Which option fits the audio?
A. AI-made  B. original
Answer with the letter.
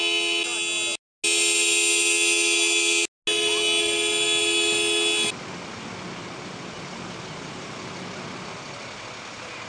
B